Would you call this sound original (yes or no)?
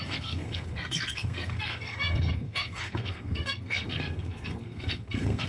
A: no